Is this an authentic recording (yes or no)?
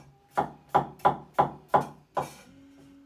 yes